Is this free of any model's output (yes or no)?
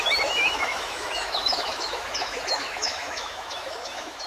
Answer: no